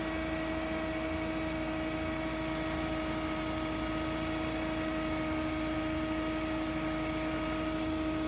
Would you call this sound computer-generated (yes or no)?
no